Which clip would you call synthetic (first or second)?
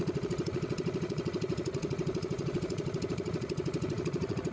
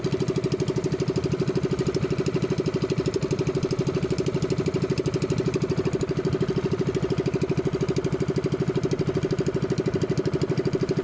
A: first